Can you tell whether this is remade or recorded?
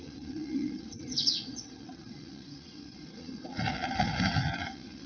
remade